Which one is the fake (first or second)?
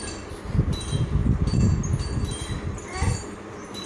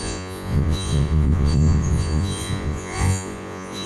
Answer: second